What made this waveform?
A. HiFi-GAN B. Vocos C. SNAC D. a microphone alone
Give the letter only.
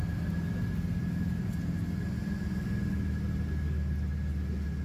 D